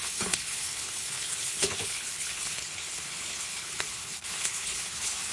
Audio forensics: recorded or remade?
remade